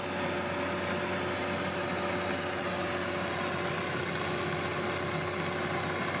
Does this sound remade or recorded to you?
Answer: recorded